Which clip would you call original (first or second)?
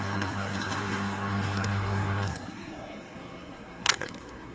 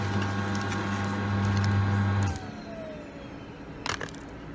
second